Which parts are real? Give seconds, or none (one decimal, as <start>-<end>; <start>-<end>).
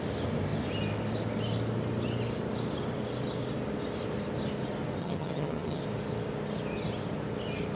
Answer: 0.0-5.0; 5.8-7.8